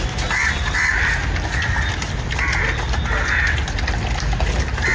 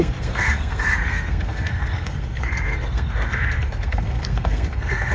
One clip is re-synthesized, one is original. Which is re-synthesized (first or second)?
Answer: second